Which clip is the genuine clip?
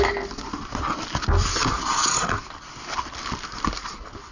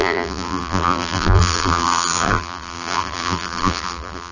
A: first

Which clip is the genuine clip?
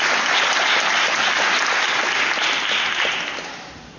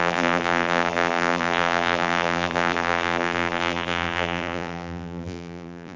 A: first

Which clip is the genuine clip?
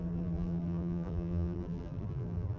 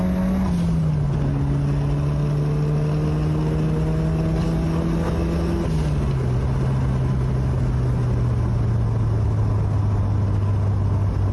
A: second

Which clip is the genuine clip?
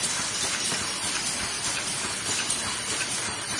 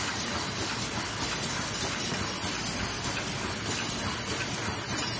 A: second